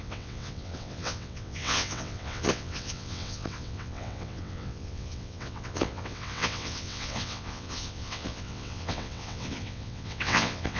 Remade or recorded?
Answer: remade